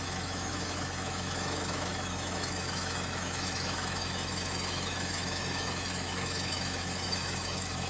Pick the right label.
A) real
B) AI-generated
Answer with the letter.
B